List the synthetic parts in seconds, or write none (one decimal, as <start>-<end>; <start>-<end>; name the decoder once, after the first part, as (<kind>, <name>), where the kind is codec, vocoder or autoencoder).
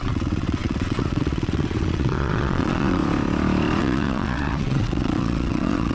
0.0-3.0 (vocoder, WaveNeXt); 3.8-5.9